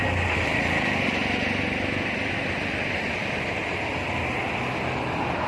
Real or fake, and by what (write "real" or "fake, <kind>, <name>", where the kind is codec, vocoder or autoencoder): real